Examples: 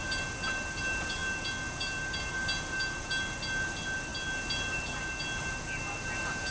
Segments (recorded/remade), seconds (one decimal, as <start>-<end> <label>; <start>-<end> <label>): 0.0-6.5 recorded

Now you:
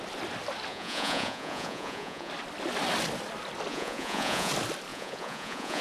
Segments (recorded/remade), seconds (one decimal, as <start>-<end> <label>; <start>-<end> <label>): 0.0-0.7 recorded; 0.7-2.3 remade; 2.3-3.7 recorded; 3.7-4.5 remade; 4.5-4.9 recorded; 4.9-5.8 remade

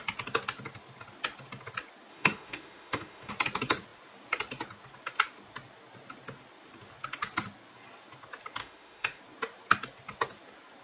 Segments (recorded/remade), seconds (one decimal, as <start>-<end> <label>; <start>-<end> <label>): 0.0-2.1 recorded; 2.1-3.3 remade; 3.3-8.6 recorded; 8.6-9.2 remade; 9.2-10.8 recorded

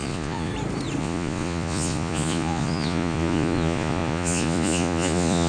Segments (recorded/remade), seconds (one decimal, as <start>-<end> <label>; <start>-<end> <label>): 0.0-0.5 remade; 0.5-1.0 recorded; 1.0-5.5 remade